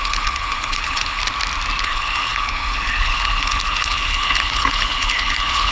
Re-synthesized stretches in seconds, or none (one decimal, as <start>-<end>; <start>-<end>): 0.0-1.2; 1.8-5.7